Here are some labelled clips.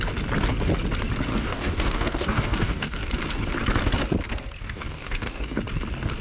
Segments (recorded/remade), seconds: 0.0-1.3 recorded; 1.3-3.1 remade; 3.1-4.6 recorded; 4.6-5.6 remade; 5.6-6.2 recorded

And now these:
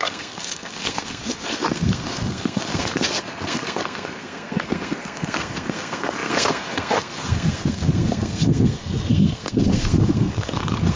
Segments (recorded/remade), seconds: 0.0-11.0 remade

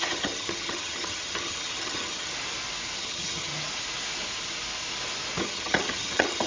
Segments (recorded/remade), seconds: 0.0-2.3 remade; 2.3-3.0 recorded; 3.0-3.5 remade; 3.5-5.4 recorded; 5.4-6.5 remade

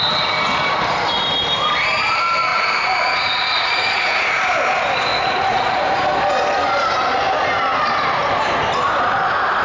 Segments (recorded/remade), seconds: 0.0-2.5 recorded; 2.5-4.4 remade; 4.4-5.1 recorded; 5.1-5.9 remade; 5.9-9.6 recorded